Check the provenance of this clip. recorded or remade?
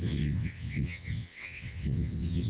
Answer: remade